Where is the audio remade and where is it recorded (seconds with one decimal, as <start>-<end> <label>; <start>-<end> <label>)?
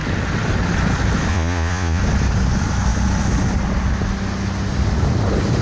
0.0-1.3 recorded; 1.3-2.0 remade; 2.0-5.6 recorded